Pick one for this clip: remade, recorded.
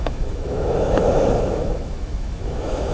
remade